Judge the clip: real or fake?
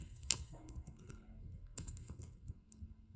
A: fake